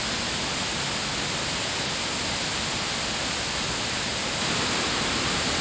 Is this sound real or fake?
real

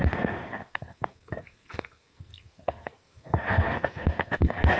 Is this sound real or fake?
fake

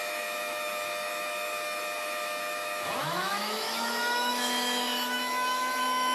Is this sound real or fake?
fake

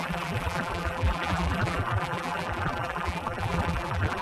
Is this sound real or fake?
fake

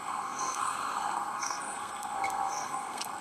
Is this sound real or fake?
fake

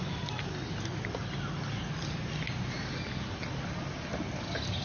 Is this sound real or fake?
real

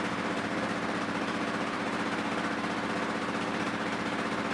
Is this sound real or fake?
fake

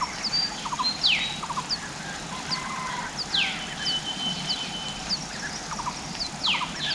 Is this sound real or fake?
real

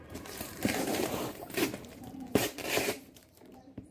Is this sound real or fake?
fake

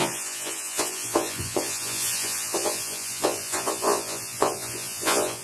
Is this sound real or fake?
fake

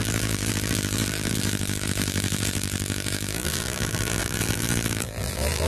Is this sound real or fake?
fake